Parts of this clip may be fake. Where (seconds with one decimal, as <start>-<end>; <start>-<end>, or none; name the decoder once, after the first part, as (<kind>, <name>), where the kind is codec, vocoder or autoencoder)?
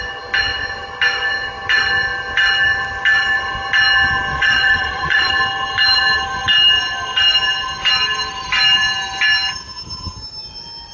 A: 4.3-5.3 (vocoder, Vocos)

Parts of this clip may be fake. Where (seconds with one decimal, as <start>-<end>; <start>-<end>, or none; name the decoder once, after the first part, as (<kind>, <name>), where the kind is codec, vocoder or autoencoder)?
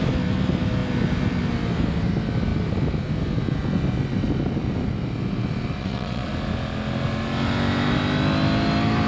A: 5.8-6.3 (vocoder, Vocos)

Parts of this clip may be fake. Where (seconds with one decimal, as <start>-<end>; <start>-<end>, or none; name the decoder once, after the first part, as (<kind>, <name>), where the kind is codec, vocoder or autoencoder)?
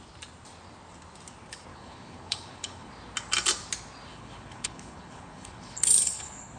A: 1.7-2.9 (codec, HILCodec); 4.1-6.6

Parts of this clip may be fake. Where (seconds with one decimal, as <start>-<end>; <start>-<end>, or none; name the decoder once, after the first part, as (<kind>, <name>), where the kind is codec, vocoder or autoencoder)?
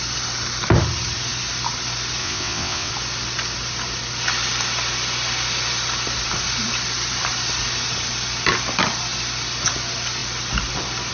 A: 2.2-2.9 (vocoder, WaveNeXt)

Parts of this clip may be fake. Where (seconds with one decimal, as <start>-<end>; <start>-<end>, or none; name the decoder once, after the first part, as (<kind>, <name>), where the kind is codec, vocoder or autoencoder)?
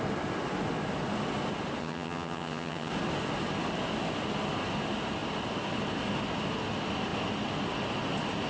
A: 1.8-2.9 (vocoder, HiFi-GAN)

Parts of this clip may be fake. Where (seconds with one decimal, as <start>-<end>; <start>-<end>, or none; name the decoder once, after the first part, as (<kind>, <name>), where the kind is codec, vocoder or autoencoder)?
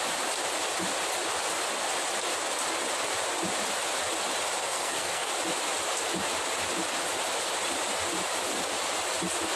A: 4.6-5.3 (codec, SNAC)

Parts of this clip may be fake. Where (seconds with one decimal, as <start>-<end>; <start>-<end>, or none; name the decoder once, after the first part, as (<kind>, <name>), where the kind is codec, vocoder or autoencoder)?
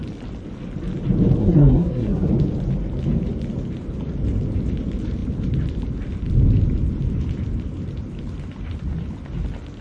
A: 1.4-2.3 (codec, SNAC)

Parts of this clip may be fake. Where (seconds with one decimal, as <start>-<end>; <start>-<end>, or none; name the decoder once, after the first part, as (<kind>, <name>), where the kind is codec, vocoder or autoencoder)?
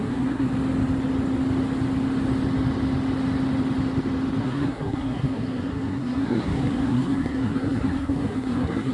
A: 0.0-0.5 (codec, SNAC); 4.4-8.9